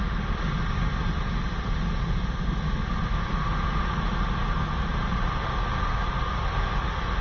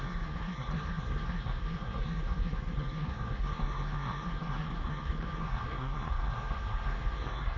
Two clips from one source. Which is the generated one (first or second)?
second